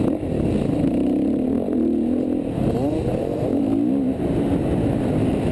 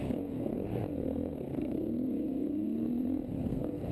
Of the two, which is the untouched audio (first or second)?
first